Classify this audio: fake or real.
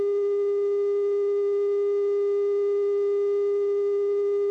real